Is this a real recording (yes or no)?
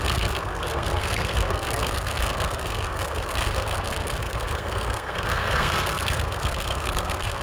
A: no